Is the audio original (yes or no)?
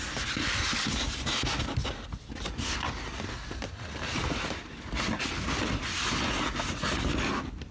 yes